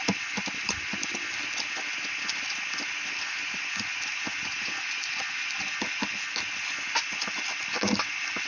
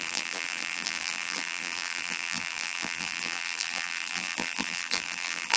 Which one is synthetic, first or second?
second